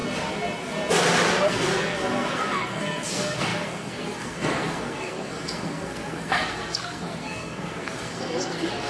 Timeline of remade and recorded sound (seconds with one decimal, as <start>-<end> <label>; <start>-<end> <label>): 0.0-1.4 recorded; 1.4-8.9 remade